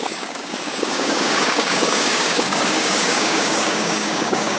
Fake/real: fake